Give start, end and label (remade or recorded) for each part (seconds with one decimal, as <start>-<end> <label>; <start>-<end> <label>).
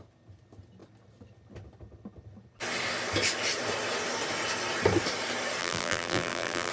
0.0-5.6 recorded; 5.6-6.7 remade